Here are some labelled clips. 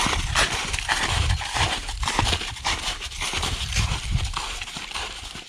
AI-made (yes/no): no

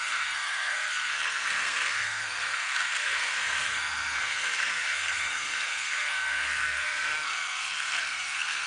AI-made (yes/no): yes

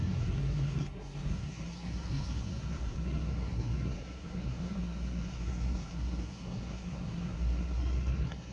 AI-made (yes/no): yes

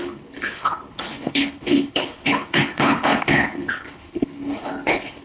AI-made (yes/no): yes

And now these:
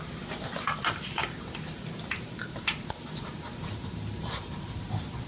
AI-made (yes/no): no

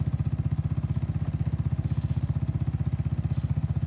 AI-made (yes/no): no